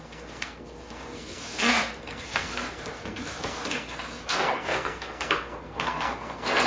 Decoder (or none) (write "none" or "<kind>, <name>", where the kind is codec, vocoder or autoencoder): codec, SNAC